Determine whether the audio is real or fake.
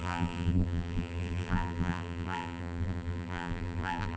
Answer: fake